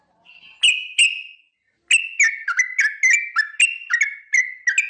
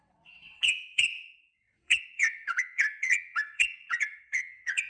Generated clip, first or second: second